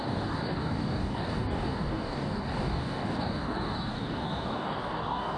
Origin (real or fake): fake